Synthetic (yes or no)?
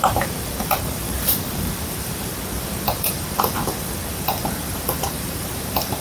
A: yes